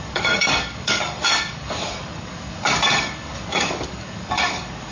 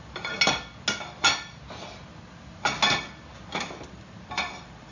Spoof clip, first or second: first